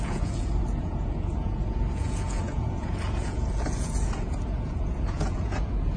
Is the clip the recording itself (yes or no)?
no